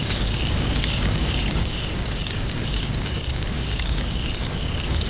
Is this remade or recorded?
remade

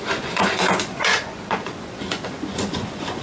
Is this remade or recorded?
remade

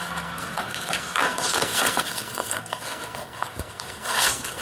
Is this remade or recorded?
remade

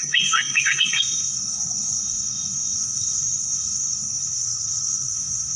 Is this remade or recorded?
remade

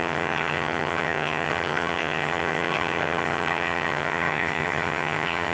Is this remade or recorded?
remade